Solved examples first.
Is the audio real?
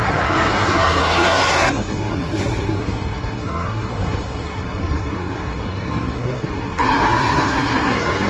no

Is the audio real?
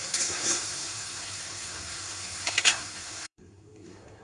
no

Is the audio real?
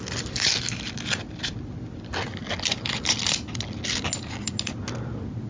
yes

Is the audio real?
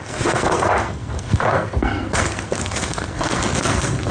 no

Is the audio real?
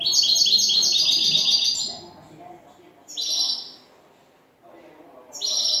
yes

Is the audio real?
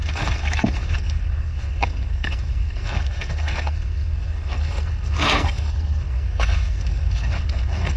no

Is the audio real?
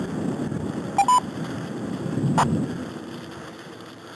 yes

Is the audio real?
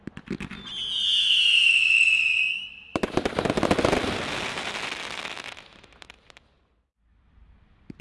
yes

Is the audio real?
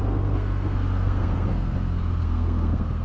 no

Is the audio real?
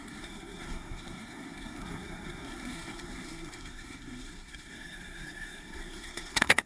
no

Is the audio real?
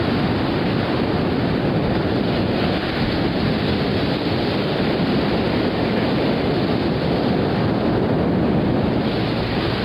yes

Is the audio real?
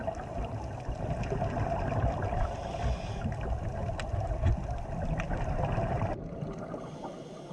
yes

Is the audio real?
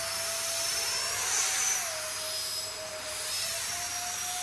yes